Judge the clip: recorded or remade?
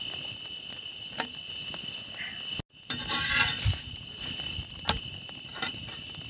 recorded